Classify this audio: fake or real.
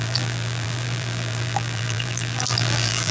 fake